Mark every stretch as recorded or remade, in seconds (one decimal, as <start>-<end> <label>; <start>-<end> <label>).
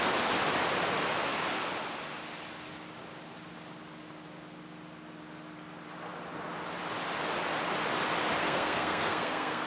0.0-8.4 recorded; 8.4-9.7 remade